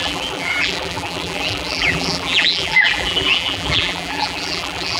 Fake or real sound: fake